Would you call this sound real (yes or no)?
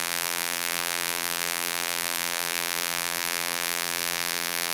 no